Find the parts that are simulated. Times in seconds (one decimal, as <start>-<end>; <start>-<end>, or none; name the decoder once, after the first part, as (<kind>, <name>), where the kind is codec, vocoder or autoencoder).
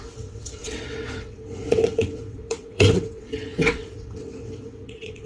0.0-5.3 (vocoder, WaveNeXt)